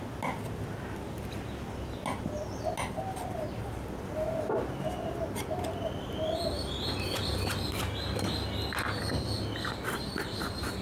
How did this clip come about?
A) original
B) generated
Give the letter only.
A